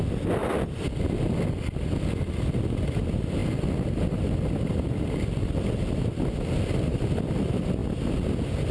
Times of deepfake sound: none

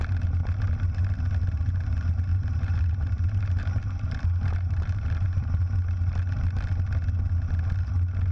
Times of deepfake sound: 2.3-5.6 (vocoder, BigVGAN v2)

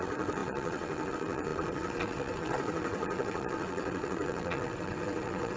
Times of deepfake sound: 0.0-5.6 (vocoder, WaveNeXt)